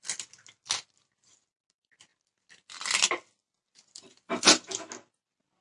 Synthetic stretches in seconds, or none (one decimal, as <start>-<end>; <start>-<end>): none